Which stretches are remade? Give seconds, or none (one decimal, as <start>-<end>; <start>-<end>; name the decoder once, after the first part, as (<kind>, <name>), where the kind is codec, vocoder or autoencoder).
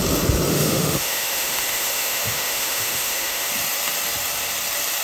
0.5-3.5 (autoencoder, DAC-VAE)